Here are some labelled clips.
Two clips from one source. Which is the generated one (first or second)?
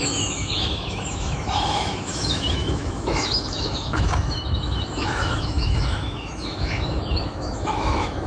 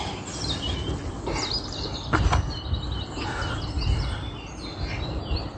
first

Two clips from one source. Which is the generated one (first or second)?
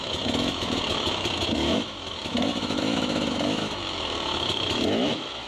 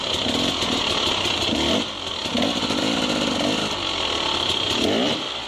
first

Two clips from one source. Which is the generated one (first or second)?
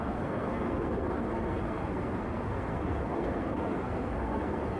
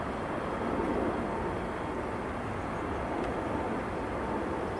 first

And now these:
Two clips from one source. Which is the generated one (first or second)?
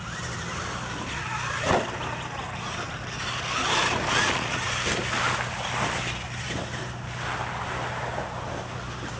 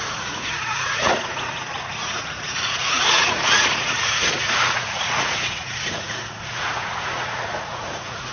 second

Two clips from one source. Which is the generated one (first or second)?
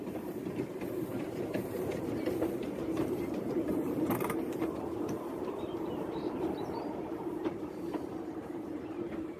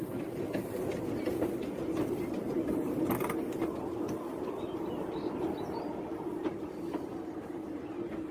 first